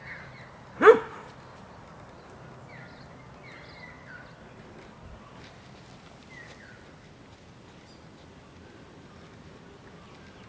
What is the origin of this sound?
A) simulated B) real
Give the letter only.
B